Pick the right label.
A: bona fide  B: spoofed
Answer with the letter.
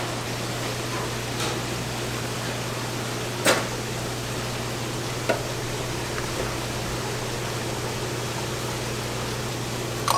A